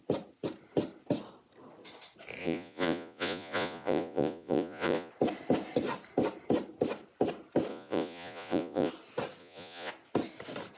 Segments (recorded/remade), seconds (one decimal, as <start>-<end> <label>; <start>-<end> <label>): 0.0-2.4 recorded; 2.4-5.1 remade; 5.1-7.7 recorded; 7.7-8.9 remade; 8.9-9.4 recorded; 9.4-9.9 remade; 9.9-10.8 recorded